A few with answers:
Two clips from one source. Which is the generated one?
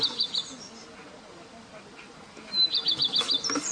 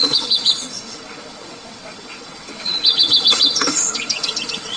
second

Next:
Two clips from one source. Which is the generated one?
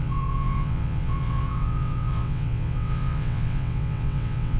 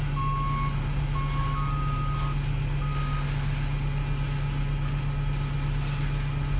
first